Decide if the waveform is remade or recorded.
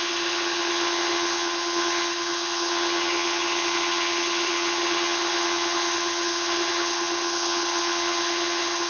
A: remade